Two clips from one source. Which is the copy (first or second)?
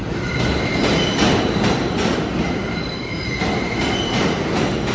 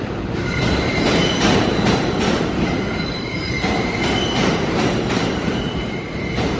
second